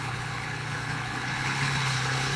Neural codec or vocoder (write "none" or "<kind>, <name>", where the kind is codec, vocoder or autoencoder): codec, HILCodec